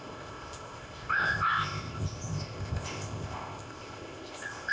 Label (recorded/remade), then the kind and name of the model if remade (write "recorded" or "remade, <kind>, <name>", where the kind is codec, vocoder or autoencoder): remade, codec, ZipCodec